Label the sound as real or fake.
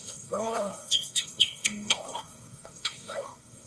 fake